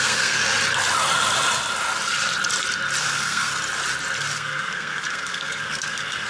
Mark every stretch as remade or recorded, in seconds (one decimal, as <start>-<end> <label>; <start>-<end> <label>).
0.0-0.4 remade; 0.4-3.0 recorded; 3.0-3.5 remade; 3.5-4.3 recorded; 4.3-6.3 remade